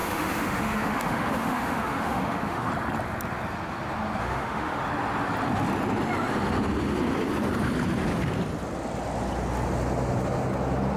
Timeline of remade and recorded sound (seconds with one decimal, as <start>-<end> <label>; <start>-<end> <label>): 0.0-2.7 remade; 2.7-4.2 recorded; 4.2-4.8 remade; 4.8-11.0 recorded